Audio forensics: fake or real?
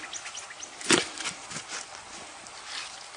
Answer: real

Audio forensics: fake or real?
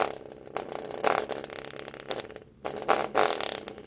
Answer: real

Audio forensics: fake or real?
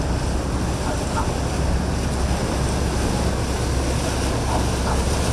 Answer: real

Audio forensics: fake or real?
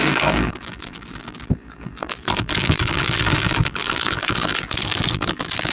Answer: fake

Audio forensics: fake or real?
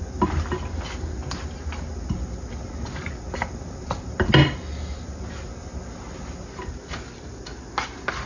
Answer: real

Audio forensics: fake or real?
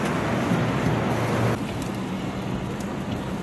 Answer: real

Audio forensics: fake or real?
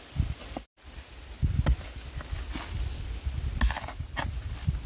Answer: real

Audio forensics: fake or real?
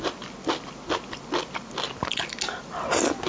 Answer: real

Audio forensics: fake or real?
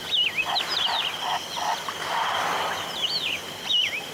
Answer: real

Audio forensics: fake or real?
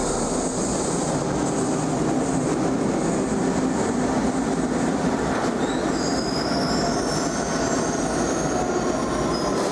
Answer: real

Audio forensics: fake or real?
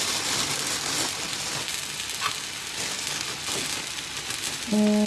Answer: real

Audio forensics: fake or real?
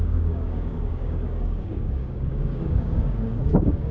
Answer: fake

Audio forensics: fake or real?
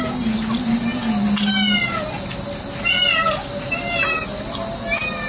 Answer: real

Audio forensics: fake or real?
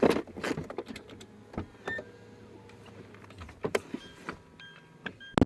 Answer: real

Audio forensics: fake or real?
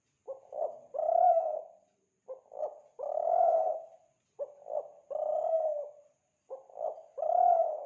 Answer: real